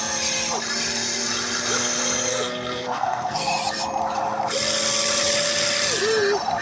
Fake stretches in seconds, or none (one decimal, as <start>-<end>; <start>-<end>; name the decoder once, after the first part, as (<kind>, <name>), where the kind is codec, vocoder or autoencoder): 2.3-3.5 (codec, SNAC)